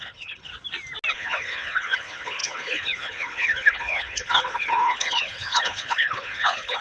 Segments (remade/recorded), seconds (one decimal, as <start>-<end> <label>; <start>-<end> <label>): 0.0-0.5 remade; 0.5-1.1 recorded; 1.1-6.8 remade